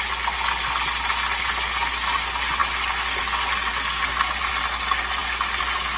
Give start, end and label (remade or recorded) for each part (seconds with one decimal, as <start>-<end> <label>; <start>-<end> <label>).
0.0-6.0 recorded